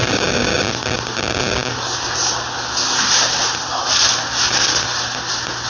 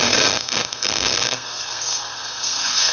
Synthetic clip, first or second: second